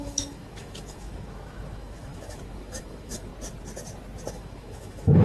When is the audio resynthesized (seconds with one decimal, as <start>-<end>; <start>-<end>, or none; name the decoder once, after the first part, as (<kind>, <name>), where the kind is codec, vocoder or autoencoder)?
0.0-3.3 (autoencoder, DAC-VAE); 4.3-5.2